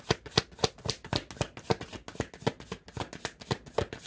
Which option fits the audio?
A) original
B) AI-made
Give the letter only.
A